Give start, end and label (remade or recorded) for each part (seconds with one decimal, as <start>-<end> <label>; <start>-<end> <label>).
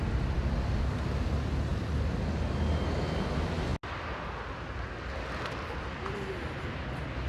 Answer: 0.0-7.3 recorded